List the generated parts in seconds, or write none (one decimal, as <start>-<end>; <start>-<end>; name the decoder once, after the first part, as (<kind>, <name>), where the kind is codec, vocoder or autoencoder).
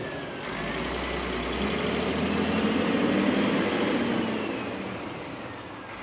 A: none